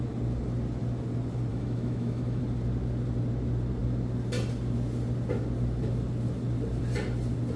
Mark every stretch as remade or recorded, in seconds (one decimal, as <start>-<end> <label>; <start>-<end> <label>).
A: 0.0-1.5 recorded; 1.5-2.4 remade; 2.4-7.6 recorded